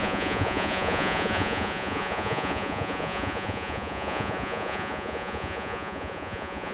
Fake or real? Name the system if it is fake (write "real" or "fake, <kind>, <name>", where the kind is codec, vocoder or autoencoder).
fake, vocoder, Vocos